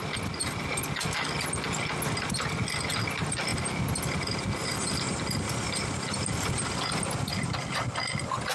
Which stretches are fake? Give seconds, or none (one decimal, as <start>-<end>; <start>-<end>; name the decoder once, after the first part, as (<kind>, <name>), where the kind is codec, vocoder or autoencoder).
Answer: none